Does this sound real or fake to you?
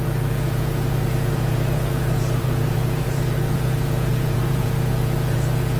fake